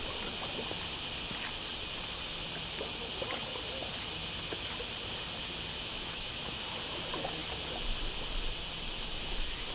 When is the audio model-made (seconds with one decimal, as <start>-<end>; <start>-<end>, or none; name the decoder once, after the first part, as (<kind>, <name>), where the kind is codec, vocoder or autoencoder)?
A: 5.9-6.6 (autoencoder, DAC-VAE)

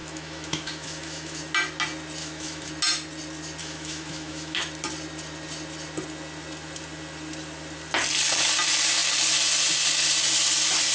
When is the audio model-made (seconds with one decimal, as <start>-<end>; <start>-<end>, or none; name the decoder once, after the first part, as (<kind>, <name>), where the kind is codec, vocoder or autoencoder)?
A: 0.0-1.4 (autoencoder, DAC-VAE); 2.2-2.7; 3.6-4.6

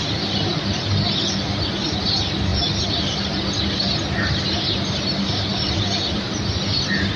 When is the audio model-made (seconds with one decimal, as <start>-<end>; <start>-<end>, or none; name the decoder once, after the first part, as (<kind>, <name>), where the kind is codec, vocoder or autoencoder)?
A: none

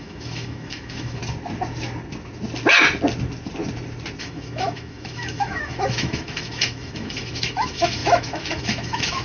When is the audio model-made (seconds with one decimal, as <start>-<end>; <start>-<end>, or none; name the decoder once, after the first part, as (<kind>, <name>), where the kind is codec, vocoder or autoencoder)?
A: 0.0-1.2 (autoencoder, DAC-VAE); 4.2-9.2